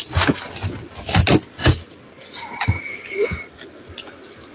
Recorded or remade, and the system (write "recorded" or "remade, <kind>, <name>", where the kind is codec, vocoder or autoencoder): recorded